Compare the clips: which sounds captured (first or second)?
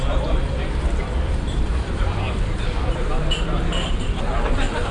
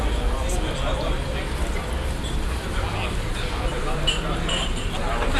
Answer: second